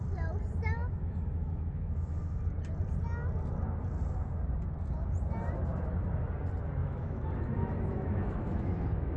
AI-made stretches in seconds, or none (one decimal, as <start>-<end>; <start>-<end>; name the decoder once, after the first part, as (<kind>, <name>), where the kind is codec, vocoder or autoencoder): 0.8-2.4 (autoencoder, DAC-VAE); 6.8-9.2